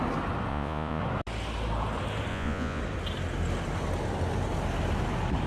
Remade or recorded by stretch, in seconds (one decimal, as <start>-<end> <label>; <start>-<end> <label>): 0.0-0.5 recorded; 0.5-1.0 remade; 1.0-2.3 recorded; 2.3-2.8 remade; 2.8-5.5 recorded